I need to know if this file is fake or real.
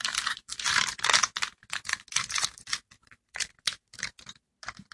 fake